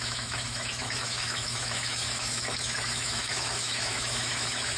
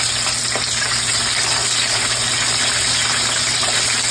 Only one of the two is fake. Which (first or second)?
first